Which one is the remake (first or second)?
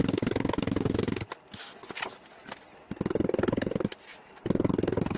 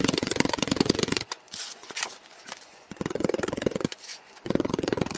second